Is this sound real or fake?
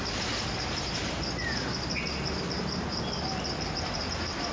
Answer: real